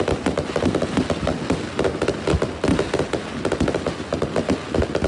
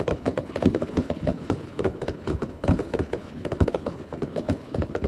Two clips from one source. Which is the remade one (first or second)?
second